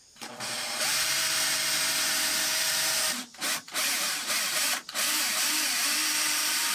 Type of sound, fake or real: fake